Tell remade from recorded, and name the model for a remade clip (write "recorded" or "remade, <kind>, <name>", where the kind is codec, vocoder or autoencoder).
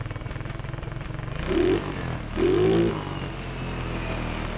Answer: recorded